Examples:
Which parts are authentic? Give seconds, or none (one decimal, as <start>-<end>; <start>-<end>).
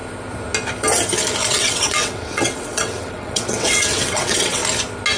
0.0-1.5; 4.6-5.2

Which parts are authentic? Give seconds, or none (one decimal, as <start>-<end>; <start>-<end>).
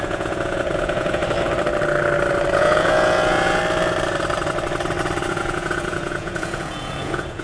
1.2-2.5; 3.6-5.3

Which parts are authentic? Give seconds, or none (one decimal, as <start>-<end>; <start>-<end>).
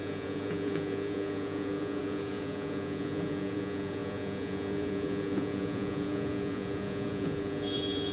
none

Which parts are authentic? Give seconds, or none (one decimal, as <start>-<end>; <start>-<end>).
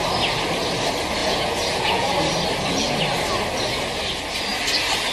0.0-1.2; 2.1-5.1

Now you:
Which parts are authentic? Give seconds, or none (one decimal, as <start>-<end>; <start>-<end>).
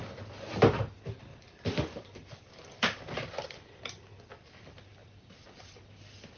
0.0-1.3; 4.3-5.0; 5.7-6.4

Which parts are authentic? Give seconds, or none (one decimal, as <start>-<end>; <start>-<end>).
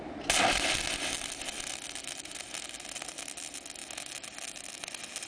0.0-5.3